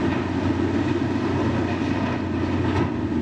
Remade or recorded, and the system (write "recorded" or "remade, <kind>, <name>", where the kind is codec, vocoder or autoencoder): recorded